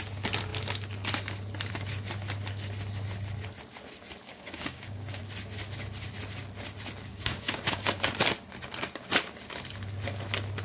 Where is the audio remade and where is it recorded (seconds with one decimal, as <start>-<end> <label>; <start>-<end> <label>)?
0.0-4.3 recorded; 4.3-5.2 remade; 5.2-7.1 recorded; 7.1-8.0 remade; 8.0-10.6 recorded

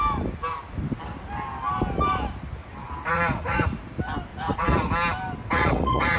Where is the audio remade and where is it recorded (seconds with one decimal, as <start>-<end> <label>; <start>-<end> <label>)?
0.0-2.8 recorded; 2.8-3.7 remade; 3.7-4.3 recorded; 4.3-4.9 remade; 4.9-5.4 recorded; 5.4-6.2 remade